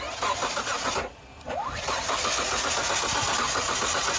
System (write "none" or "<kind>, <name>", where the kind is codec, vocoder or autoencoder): none